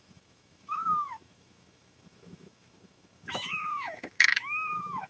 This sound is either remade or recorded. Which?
remade